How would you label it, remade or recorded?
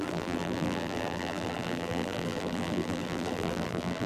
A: remade